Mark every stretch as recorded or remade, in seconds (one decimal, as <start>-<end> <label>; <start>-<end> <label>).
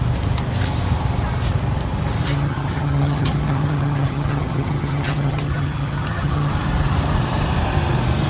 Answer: 0.0-2.3 recorded; 2.3-6.5 remade; 6.5-8.3 recorded